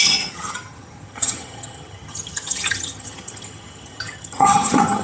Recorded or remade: remade